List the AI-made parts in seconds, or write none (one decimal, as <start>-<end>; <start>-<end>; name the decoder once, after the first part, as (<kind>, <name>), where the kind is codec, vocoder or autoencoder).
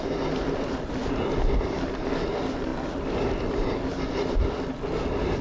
none